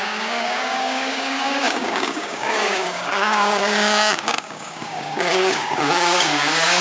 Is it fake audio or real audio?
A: fake